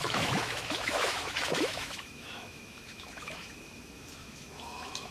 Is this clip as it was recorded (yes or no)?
no